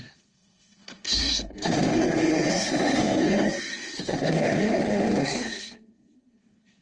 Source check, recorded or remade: remade